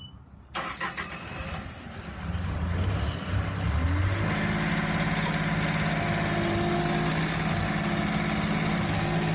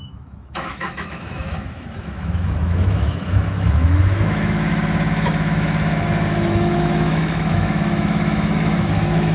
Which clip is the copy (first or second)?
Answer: second